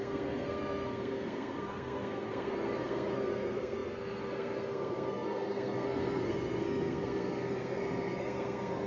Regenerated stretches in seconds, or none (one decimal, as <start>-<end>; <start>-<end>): 0.0-8.9